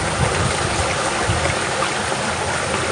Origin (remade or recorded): recorded